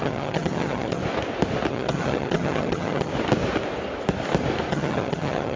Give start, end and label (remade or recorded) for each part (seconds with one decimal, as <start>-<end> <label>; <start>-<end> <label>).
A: 0.0-1.0 remade; 1.0-1.7 recorded; 1.7-3.1 remade; 3.1-4.7 recorded; 4.7-5.6 remade